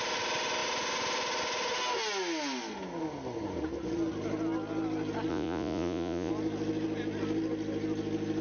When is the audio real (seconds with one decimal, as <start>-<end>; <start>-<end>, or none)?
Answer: 0.0-5.3; 6.3-8.4